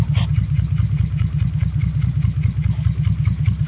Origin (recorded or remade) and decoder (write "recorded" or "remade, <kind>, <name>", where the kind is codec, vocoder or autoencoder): recorded